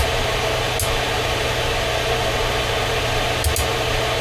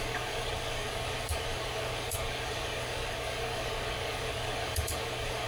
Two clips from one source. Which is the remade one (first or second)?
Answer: second